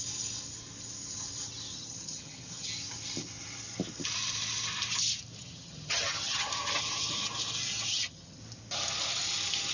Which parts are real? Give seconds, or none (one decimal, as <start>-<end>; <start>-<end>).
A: 0.0-1.7; 2.7-5.4; 6.5-7.9; 8.4-9.7